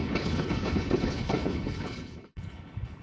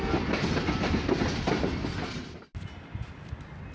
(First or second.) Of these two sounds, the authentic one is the second